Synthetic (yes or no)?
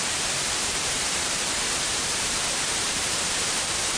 yes